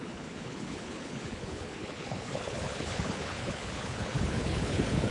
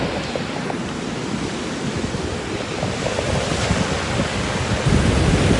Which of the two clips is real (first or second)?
second